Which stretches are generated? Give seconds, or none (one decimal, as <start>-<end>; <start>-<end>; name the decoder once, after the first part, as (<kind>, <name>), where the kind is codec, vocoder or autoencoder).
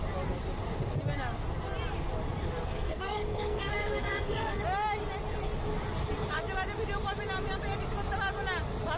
2.7-4.6 (codec, SNAC)